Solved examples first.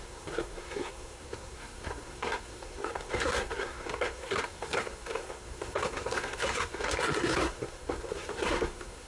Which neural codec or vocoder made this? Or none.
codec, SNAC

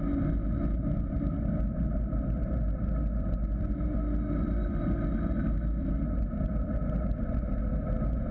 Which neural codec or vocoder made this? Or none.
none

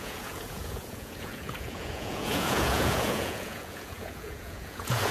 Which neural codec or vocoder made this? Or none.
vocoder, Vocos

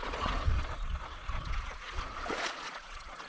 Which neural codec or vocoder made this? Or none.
vocoder, Vocos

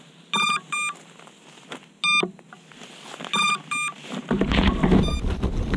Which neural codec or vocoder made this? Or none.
none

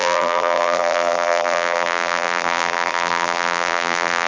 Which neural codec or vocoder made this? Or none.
vocoder, BigVGAN v2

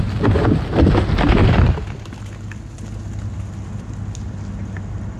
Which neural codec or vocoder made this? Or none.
none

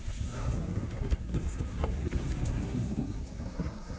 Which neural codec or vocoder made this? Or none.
codec, SNAC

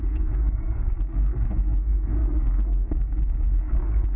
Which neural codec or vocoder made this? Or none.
codec, SNAC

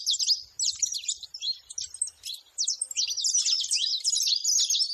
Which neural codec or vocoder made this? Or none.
none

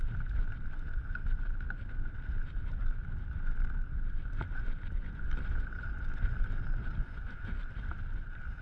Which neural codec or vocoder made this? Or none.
none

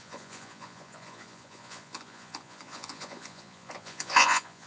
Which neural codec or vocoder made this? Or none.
vocoder, Vocos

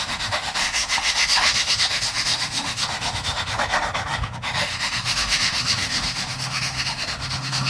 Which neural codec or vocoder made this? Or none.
autoencoder, DAC-VAE